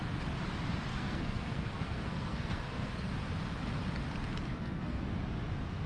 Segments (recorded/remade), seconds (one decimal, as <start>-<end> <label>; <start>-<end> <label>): 0.0-0.9 recorded; 0.9-3.1 remade; 3.1-4.5 recorded; 4.5-5.0 remade; 5.0-5.9 recorded